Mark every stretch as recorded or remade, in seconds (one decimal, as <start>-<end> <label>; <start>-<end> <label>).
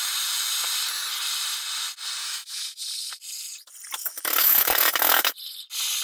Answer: 0.0-2.2 recorded; 2.2-2.8 remade; 2.8-4.0 recorded; 4.0-5.3 remade; 5.3-6.0 recorded